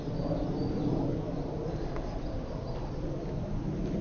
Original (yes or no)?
yes